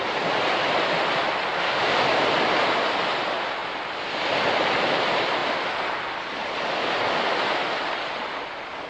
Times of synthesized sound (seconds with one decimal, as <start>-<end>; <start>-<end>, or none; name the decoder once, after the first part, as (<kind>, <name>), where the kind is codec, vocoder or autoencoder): none